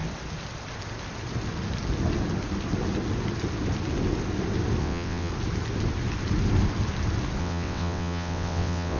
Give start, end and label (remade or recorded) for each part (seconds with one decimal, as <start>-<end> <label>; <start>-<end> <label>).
0.0-4.8 recorded; 4.8-5.3 remade; 5.3-7.4 recorded; 7.4-9.0 remade